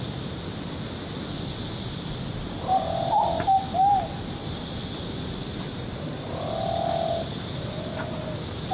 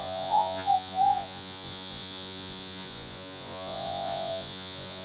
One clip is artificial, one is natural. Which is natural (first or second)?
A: first